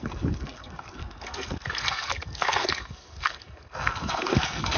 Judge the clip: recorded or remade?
remade